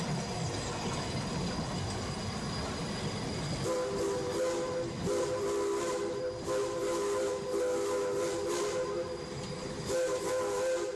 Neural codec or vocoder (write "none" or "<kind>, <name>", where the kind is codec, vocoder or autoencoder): none